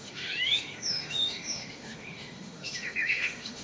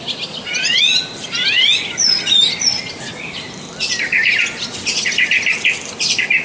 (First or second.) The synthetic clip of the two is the first